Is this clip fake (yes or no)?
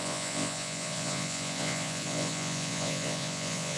yes